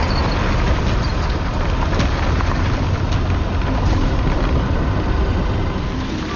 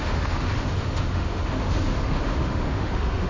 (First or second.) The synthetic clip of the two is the second